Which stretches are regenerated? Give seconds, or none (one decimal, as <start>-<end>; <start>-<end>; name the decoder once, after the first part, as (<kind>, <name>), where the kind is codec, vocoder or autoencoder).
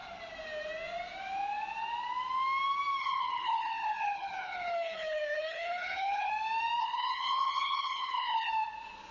3.0-6.3 (codec, HILCodec); 6.8-8.5